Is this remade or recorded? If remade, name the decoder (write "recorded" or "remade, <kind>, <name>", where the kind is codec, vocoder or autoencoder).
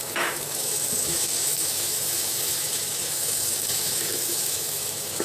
remade, autoencoder, DAC-VAE